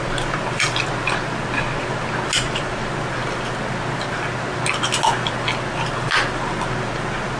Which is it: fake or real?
real